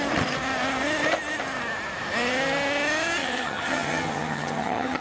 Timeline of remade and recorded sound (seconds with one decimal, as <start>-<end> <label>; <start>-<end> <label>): 0.0-3.2 recorded; 3.2-5.0 remade